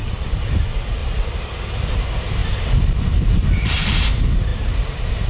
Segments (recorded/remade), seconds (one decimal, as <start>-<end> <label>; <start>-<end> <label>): 0.0-0.6 remade; 0.6-1.0 recorded; 1.0-1.7 remade; 1.7-2.4 recorded; 2.4-3.7 remade; 3.7-4.5 recorded; 4.5-5.3 remade